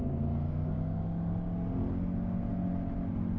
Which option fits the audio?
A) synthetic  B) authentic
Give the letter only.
B